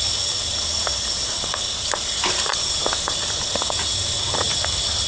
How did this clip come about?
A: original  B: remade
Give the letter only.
A